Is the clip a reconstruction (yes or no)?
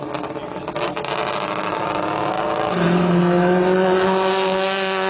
no